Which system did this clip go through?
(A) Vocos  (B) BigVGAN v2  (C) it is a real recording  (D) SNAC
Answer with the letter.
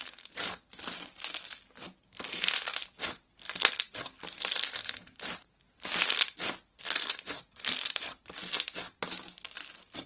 C